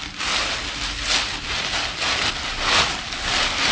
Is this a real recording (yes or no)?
yes